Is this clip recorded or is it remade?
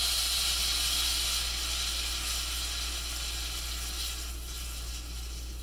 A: recorded